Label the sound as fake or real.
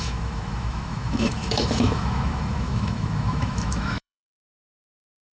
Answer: fake